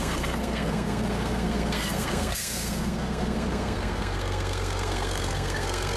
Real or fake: fake